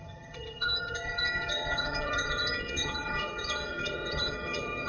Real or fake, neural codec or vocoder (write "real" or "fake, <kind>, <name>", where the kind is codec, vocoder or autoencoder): fake, vocoder, HiFi-GAN